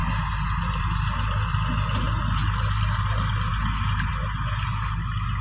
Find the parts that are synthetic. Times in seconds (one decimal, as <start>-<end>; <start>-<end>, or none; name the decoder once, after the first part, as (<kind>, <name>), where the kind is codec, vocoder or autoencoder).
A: none